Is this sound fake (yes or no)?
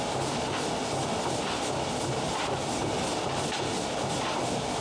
no